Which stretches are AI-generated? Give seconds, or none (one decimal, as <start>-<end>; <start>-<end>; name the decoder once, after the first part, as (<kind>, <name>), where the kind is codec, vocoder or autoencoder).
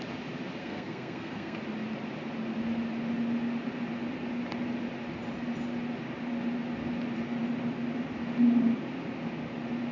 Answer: 0.6-1.6 (codec, SNAC)